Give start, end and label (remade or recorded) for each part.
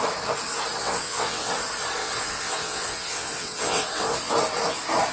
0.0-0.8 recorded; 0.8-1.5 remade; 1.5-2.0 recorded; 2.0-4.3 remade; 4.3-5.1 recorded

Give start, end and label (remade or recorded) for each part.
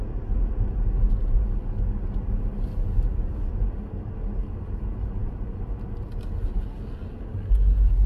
0.0-8.1 recorded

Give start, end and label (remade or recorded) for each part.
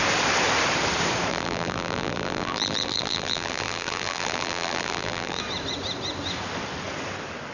0.0-1.3 recorded; 1.3-5.4 remade; 5.4-7.5 recorded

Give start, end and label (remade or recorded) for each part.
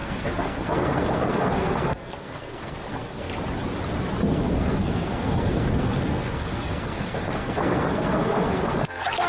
0.0-3.3 remade; 3.3-4.3 recorded; 4.3-9.3 remade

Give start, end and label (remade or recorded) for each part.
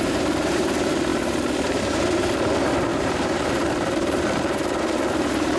0.0-5.6 remade